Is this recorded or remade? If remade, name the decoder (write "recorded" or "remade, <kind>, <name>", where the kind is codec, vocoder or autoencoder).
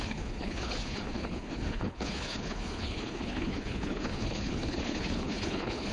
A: remade, codec, HILCodec